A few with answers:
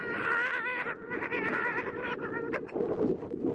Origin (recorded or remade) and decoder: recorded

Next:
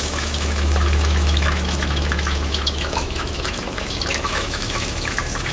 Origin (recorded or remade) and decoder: remade, autoencoder, DAC-VAE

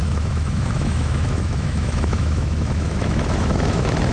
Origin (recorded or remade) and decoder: remade, autoencoder, DAC-VAE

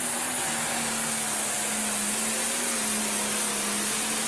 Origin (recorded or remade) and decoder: recorded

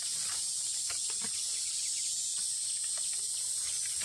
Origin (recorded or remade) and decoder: recorded